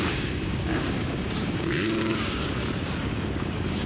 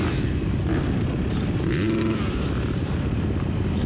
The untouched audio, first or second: second